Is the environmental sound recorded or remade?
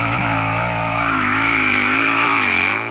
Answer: remade